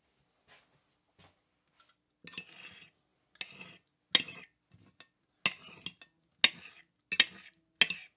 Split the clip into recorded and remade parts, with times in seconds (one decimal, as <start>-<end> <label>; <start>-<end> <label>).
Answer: 0.0-8.2 recorded